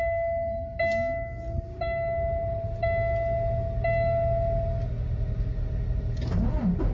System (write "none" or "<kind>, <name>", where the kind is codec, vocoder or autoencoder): none